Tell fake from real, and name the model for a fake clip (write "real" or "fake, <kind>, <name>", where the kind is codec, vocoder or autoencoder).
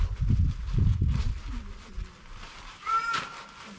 real